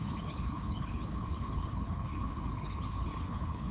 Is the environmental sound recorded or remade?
remade